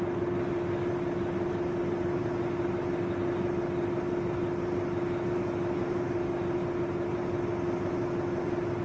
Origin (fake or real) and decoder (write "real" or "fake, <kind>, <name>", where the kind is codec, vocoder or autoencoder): real